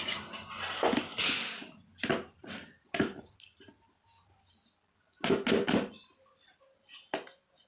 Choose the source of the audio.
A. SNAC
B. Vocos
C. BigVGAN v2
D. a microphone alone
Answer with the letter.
D